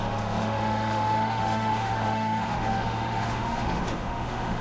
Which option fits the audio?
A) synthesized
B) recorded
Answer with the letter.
A